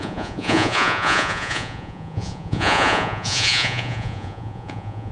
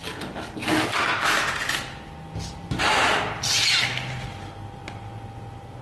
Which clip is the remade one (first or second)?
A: first